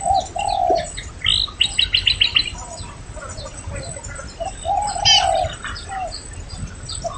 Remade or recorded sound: recorded